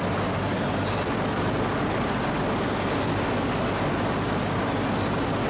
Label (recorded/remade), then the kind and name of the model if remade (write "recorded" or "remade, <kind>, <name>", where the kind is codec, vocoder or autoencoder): recorded